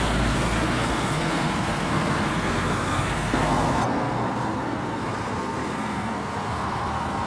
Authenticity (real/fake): fake